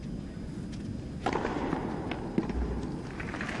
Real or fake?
real